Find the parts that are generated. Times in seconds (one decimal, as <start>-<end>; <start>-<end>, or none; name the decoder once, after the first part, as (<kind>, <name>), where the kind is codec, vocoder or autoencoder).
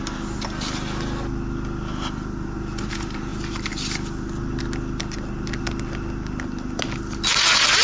none